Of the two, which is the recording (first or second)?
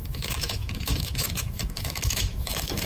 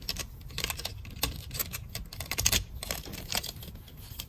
second